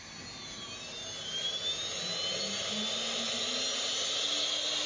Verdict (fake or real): real